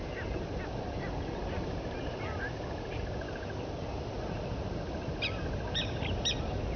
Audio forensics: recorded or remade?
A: recorded